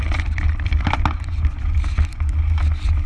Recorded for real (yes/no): yes